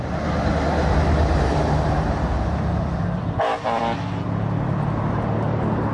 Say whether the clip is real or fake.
fake